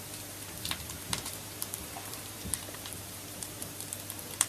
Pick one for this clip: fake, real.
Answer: fake